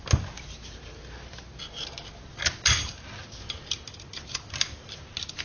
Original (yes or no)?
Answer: yes